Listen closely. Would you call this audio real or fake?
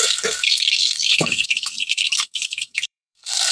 fake